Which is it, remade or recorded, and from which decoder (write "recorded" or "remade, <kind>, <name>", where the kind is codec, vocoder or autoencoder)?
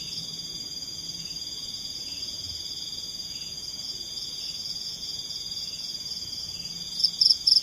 remade, vocoder, Vocos